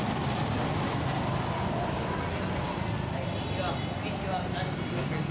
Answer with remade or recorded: recorded